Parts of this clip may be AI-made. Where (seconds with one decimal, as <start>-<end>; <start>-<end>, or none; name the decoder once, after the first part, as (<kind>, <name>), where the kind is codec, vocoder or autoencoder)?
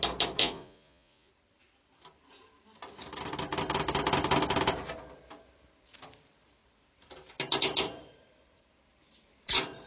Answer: 0.4-1.3 (vocoder, Vocos)